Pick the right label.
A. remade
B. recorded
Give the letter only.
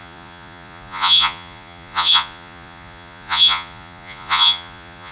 A